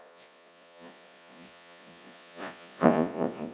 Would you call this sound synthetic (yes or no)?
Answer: yes